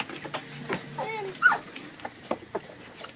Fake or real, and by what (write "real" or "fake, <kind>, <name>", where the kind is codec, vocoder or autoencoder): real